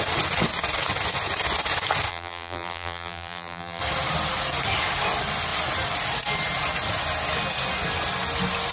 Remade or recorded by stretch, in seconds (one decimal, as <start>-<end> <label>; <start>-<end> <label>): 0.0-2.1 recorded; 2.1-3.8 remade; 3.8-8.7 recorded